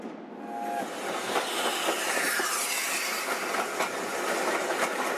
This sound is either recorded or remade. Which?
recorded